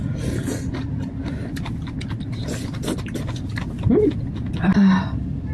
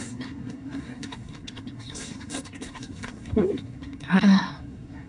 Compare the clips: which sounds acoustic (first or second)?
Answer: first